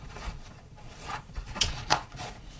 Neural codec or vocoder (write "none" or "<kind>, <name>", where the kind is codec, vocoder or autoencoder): vocoder, Vocos